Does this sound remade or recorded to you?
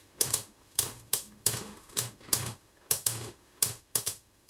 remade